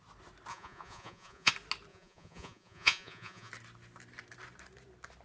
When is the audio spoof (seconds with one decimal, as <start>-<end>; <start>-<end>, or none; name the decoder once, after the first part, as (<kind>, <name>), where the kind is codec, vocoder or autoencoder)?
0.5-1.5 (vocoder, Vocos); 1.9-3.5